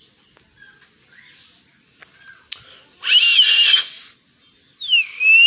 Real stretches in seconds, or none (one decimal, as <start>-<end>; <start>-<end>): 0.0-5.5